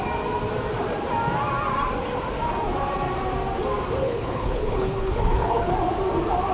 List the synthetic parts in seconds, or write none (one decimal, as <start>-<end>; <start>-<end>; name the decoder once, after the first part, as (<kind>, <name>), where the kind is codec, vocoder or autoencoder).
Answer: 4.0-5.7 (codec, HILCodec)